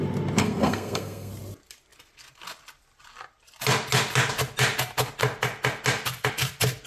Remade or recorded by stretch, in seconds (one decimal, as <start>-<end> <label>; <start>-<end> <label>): 0.0-0.4 recorded; 0.4-1.3 remade; 1.3-6.9 recorded